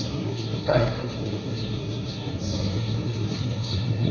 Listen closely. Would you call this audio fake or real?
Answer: fake